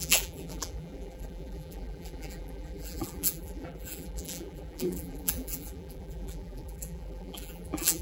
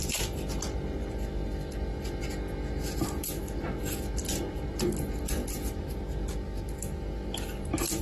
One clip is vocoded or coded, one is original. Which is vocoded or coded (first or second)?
first